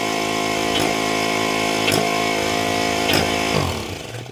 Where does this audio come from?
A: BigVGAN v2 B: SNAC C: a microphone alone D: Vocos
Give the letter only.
C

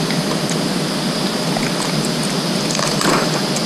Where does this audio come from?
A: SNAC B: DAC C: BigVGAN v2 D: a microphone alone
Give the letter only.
D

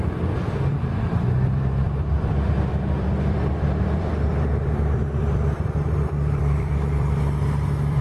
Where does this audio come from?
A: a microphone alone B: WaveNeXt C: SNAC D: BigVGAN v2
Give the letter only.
D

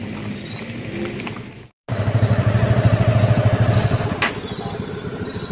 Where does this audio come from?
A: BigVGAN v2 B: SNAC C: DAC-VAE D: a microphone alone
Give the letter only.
D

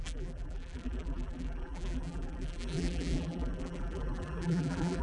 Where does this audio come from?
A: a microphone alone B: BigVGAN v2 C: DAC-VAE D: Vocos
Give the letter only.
B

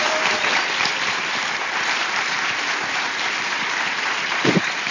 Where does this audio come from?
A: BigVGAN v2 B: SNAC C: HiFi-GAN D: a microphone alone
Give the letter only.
A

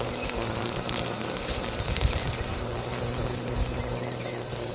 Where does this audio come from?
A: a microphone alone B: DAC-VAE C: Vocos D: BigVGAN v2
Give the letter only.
D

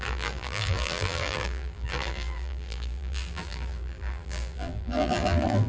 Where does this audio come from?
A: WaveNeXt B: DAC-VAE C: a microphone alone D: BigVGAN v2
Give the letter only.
D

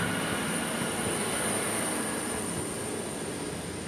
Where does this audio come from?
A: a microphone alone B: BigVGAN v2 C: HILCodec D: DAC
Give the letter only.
A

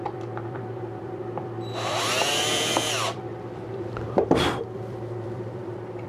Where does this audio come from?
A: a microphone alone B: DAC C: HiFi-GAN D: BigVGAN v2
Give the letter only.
D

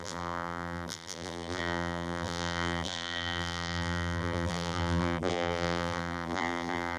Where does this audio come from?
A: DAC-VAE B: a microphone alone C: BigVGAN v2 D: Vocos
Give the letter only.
C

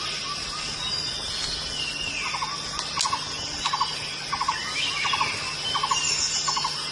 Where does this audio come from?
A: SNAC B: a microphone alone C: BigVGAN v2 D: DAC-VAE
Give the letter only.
B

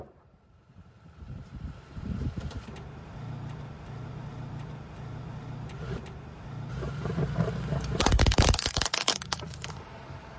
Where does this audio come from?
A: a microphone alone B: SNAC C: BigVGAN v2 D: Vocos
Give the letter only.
C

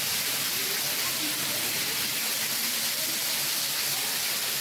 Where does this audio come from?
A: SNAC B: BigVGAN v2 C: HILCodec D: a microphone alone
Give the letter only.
D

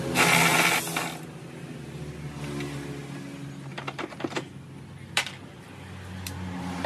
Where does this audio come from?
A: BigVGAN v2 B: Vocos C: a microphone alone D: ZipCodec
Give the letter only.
C